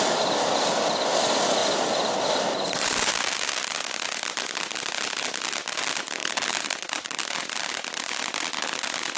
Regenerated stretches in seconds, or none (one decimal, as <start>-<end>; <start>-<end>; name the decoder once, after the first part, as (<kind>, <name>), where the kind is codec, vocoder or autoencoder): 6.2-7.2 (vocoder, BigVGAN v2)